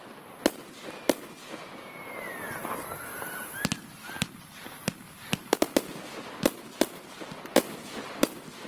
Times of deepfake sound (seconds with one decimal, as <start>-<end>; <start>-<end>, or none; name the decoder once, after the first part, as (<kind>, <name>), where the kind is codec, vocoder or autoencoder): 1.4-1.9 (vocoder, Vocos)